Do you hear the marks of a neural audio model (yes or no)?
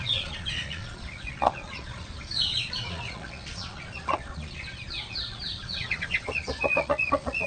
yes